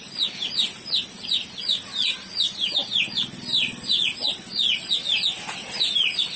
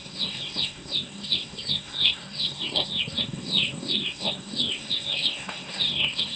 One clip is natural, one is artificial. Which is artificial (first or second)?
second